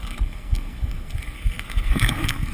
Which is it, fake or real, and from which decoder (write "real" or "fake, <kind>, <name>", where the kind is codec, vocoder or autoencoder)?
fake, codec, SNAC